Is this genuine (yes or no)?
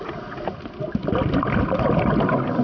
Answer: yes